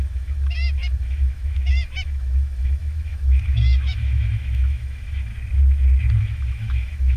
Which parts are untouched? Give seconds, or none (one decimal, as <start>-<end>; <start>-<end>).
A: 5.3-6.2